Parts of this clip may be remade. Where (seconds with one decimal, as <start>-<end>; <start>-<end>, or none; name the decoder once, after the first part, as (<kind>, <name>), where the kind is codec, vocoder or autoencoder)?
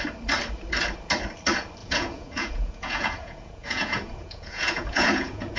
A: 1.8-5.6 (vocoder, Vocos)